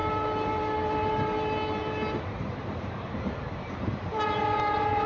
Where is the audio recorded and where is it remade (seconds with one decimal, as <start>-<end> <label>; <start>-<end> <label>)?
0.0-5.1 remade

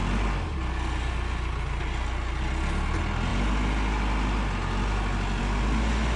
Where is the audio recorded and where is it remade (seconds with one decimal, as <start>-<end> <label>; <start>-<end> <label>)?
0.0-6.2 recorded

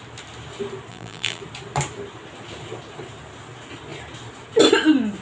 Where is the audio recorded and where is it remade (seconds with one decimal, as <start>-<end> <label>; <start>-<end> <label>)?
0.0-0.9 recorded; 0.9-1.4 remade; 1.4-5.2 recorded

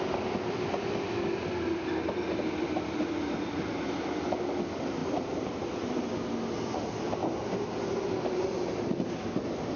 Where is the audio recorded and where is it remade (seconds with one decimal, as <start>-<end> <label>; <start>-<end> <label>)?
0.0-5.0 recorded; 5.0-6.1 remade; 6.1-7.2 recorded; 7.2-7.8 remade; 7.8-9.8 recorded

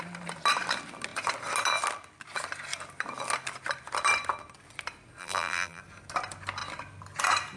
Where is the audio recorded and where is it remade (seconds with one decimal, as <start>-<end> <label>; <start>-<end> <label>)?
0.0-5.2 recorded; 5.2-5.8 remade; 5.8-7.6 recorded

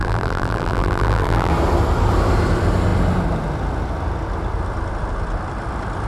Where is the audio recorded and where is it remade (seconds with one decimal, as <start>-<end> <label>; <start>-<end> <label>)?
0.0-1.5 remade; 1.5-6.1 recorded

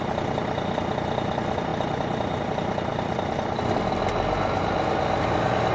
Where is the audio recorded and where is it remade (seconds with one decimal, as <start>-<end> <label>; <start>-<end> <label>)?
0.0-1.7 recorded; 1.7-2.4 remade; 2.4-5.7 recorded

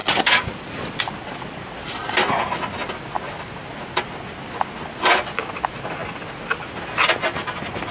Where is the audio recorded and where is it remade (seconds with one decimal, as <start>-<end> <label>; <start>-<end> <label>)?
0.0-0.6 remade; 0.6-7.9 recorded